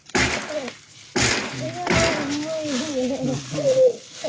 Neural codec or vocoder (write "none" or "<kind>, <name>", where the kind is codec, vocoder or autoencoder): none